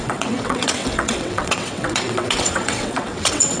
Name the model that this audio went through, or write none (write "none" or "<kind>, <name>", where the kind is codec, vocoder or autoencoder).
vocoder, WaveNeXt